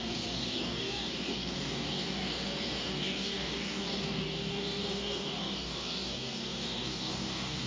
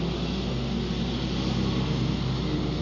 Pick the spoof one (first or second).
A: first